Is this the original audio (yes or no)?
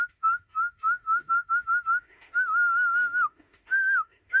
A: no